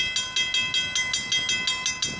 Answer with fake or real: real